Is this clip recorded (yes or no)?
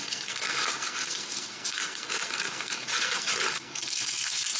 no